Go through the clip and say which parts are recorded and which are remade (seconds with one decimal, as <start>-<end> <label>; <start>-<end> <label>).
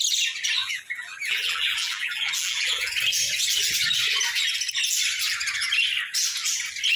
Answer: 0.0-0.6 recorded; 0.6-2.9 remade; 2.9-7.0 recorded